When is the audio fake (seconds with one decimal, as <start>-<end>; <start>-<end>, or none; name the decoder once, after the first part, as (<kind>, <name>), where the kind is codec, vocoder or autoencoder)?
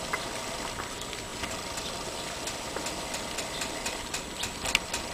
none